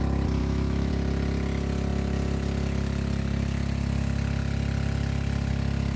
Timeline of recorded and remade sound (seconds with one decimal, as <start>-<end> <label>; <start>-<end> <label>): 0.0-0.4 recorded; 0.4-0.9 remade; 0.9-6.0 recorded